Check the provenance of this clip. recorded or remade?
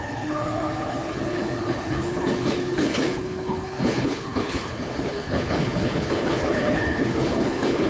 remade